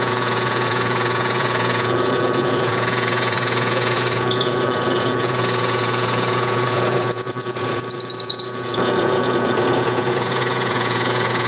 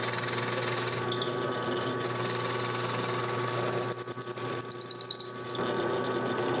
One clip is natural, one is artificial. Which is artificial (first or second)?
first